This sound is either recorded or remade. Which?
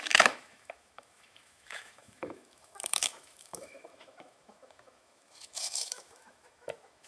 remade